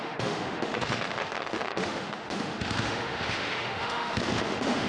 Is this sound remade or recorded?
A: remade